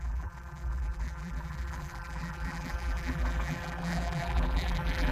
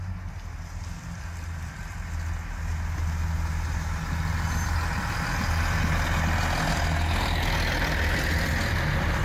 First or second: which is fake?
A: first